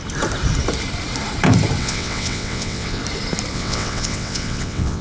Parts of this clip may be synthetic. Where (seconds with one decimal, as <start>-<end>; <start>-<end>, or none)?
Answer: 1.8-3.0; 3.5-5.0